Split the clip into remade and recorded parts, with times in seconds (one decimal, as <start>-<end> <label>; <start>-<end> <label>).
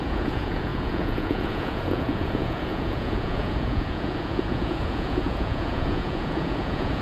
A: 0.0-7.0 remade